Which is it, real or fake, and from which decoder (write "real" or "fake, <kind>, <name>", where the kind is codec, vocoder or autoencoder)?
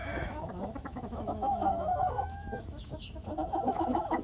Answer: fake, autoencoder, DAC-VAE